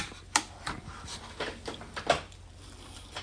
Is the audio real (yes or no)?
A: no